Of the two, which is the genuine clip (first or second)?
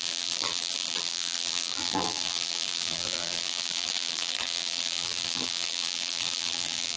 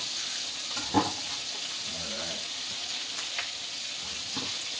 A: second